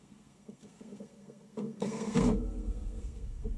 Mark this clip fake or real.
fake